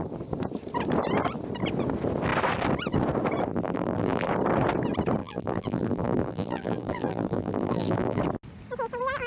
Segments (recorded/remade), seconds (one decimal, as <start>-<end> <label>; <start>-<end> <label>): 0.0-3.5 recorded; 3.5-4.3 remade; 4.3-5.2 recorded; 5.2-8.2 remade; 8.2-9.3 recorded